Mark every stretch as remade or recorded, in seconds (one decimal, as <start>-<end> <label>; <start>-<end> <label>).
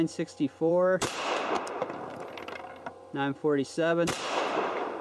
0.0-0.7 recorded; 0.7-2.4 remade; 2.4-3.4 recorded; 3.4-5.0 remade